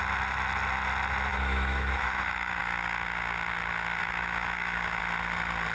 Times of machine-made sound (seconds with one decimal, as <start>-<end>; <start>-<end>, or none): 1.3-2.6; 4.0-5.0